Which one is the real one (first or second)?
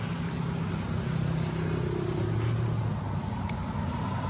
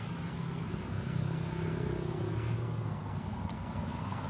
first